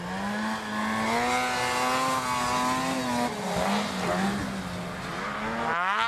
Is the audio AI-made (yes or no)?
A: no